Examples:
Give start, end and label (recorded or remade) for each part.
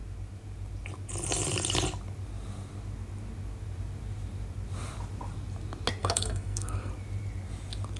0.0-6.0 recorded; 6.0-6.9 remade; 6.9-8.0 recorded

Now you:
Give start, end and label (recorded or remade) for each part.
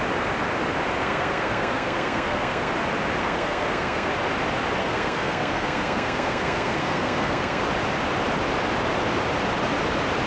0.0-1.0 recorded; 1.0-2.7 remade; 2.7-3.2 recorded; 3.2-4.1 remade; 4.1-4.8 recorded; 4.8-7.6 remade; 7.6-10.3 recorded